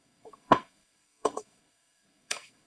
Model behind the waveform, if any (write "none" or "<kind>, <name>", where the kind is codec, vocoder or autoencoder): codec, SNAC